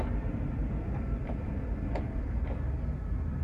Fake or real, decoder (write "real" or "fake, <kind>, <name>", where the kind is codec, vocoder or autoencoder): real